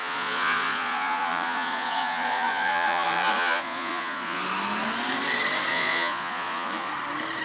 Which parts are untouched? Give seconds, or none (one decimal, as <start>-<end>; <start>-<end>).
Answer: 4.4-5.7; 6.9-7.4